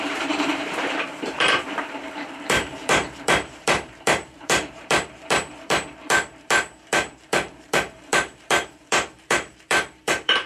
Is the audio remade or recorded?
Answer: remade